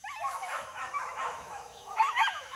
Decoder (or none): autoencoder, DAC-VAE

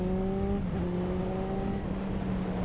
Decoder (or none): none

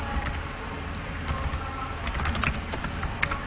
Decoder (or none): none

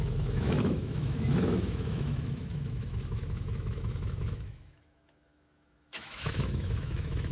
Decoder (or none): autoencoder, DAC-VAE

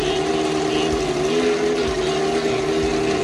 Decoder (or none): none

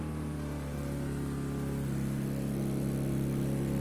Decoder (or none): none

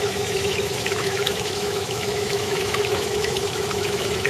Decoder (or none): autoencoder, DAC-VAE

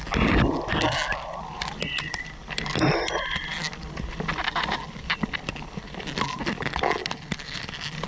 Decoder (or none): none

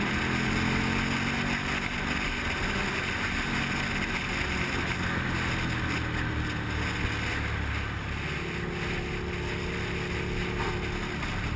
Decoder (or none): none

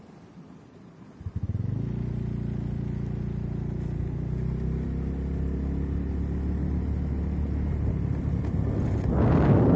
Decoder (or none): none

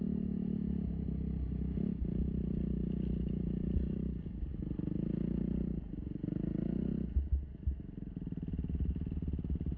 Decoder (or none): none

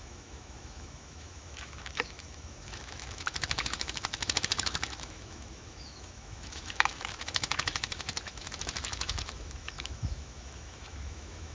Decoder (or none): autoencoder, DAC-VAE